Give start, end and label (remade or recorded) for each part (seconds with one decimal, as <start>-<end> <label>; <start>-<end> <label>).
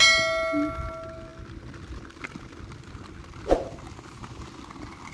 0.0-5.1 recorded